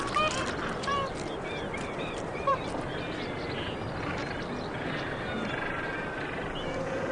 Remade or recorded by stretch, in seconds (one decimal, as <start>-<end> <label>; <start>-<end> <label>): 0.0-7.1 recorded